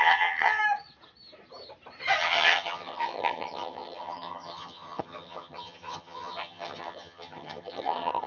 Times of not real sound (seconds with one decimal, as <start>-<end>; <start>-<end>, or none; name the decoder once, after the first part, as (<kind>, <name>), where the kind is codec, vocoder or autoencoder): 0.0-0.6 (vocoder, HiFi-GAN); 2.2-8.3